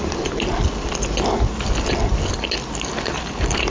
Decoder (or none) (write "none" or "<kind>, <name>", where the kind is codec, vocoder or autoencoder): none